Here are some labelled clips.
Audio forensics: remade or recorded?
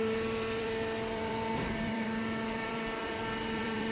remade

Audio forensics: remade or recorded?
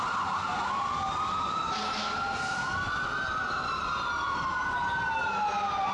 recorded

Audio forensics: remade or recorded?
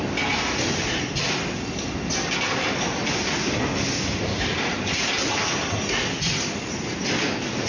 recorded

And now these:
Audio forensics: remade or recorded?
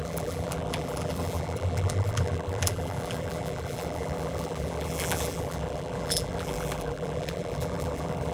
remade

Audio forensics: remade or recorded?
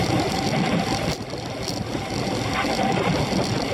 recorded